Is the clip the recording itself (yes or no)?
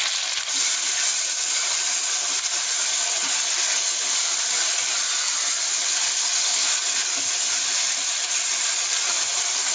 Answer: yes